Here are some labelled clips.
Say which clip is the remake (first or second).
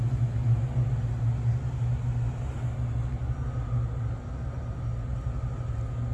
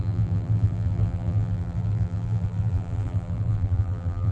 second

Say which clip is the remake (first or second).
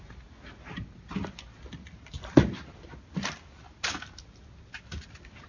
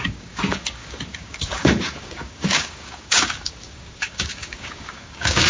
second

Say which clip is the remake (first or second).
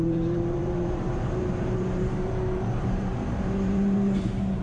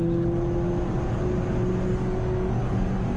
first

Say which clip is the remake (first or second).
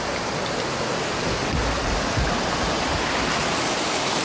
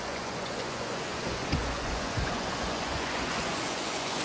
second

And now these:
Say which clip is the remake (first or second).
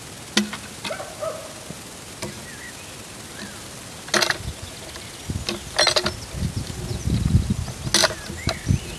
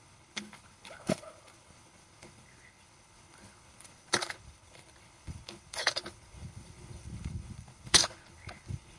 second